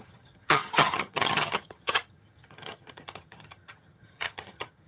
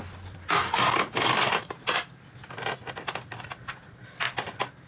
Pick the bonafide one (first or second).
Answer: second